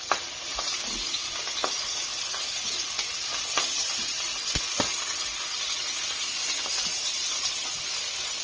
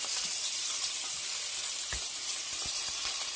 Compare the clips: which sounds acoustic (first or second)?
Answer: first